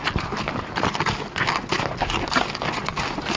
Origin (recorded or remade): recorded